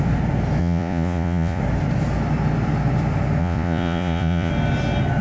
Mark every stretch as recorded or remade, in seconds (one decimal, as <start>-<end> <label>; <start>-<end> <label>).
0.0-0.6 recorded; 0.6-1.6 remade; 1.6-3.4 recorded; 3.4-4.5 remade; 4.5-5.2 recorded